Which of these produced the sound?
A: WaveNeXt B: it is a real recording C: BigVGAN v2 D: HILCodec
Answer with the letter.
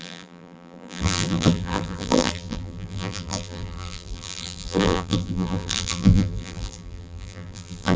C